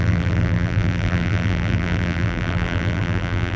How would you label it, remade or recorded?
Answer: remade